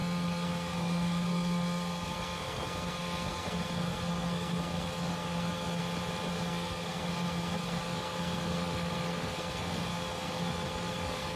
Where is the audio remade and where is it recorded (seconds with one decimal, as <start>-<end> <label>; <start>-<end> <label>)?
0.0-5.8 remade; 5.8-6.3 recorded; 6.3-11.4 remade